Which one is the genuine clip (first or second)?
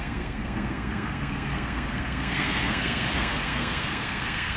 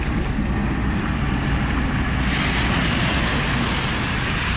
second